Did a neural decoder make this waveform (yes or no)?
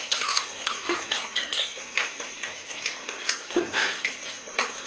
yes